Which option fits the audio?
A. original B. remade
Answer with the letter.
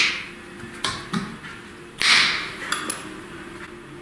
A